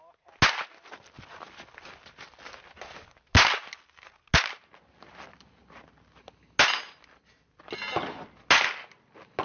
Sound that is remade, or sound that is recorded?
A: recorded